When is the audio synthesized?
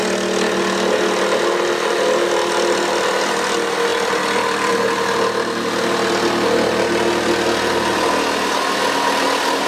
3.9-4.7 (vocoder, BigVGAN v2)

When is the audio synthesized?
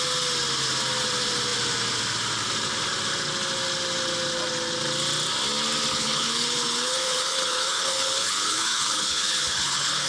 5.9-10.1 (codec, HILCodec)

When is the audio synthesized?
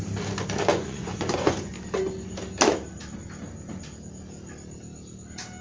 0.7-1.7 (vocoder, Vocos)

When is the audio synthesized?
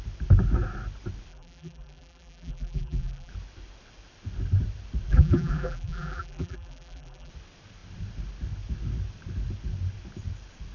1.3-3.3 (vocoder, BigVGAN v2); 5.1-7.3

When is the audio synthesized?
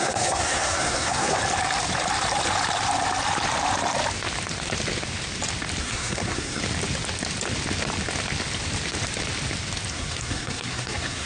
0.0-1.4 (codec, SNAC); 5.8-6.6; 9.9-11.3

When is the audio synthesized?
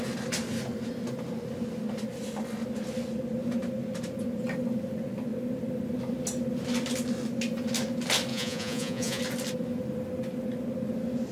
8.3-9.2 (vocoder, Vocos)